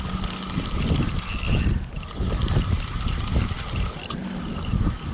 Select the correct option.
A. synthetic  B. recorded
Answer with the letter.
B